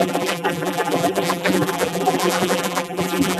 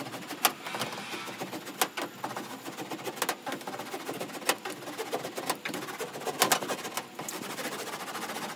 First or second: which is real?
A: second